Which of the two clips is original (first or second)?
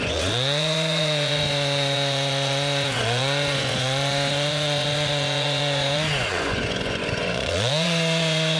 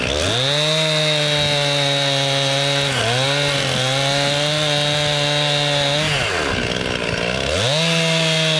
second